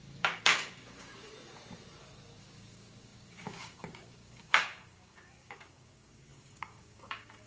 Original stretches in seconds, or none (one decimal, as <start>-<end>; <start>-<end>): 1.3-2.4